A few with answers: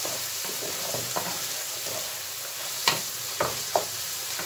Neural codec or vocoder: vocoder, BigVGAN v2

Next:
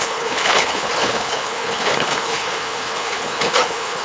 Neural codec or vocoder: codec, HILCodec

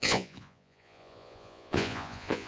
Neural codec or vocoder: vocoder, Vocos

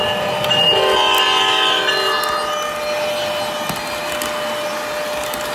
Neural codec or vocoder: none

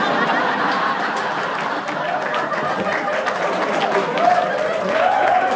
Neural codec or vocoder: none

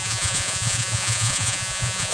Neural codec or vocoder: vocoder, Vocos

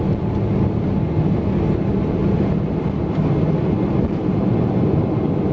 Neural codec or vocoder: none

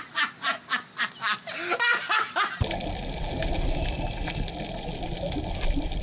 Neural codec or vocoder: none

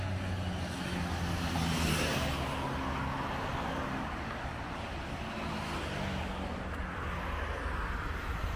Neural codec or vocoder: none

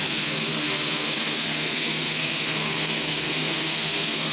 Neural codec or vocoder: codec, SNAC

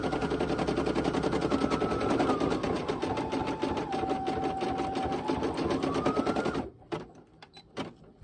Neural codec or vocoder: none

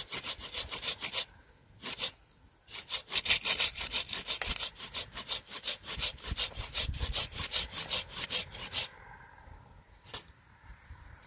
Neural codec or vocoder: none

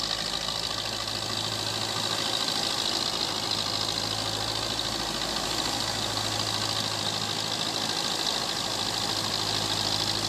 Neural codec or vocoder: none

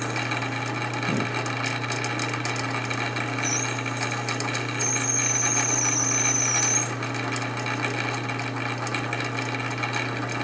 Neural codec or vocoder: none